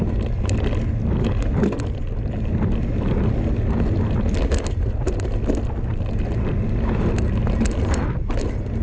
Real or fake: real